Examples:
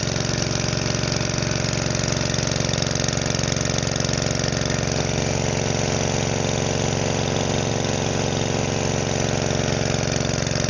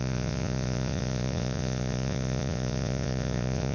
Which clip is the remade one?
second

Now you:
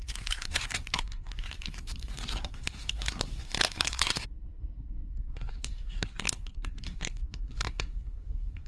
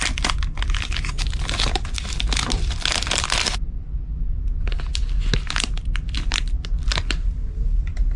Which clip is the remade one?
first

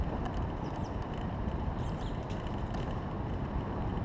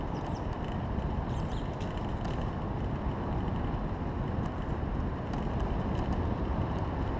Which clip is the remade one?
first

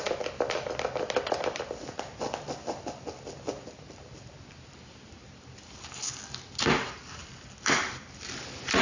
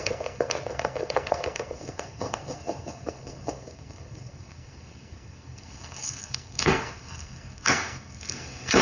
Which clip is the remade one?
second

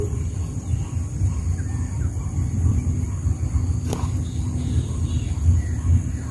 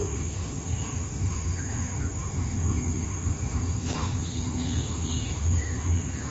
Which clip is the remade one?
second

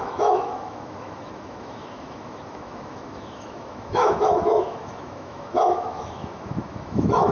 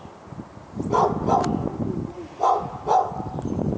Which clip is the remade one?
first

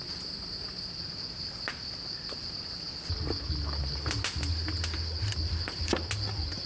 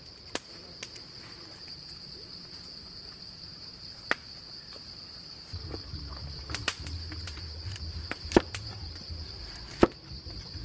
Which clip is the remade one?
second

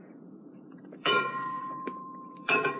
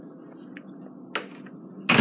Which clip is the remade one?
first